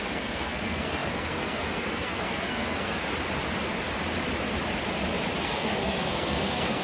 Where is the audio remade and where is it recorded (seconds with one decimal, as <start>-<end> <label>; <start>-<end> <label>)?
0.0-3.0 remade; 3.0-5.4 recorded; 5.4-6.8 remade